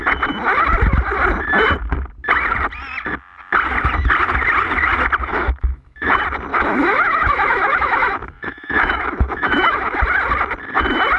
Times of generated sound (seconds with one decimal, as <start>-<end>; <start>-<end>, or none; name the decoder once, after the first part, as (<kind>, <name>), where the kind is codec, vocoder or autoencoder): 5.3-6.1 (autoencoder, DAC-VAE); 6.5-10.0